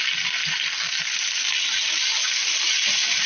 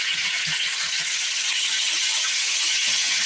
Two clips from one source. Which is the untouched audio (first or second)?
first